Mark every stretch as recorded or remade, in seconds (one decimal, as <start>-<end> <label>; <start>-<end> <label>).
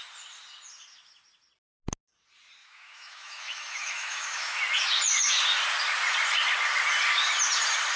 0.0-2.6 recorded; 2.6-4.6 remade; 4.6-8.0 recorded